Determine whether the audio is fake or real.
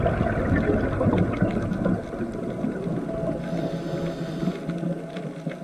real